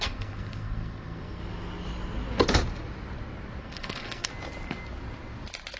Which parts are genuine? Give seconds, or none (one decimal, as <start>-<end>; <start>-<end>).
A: 1.4-3.6; 4.3-5.8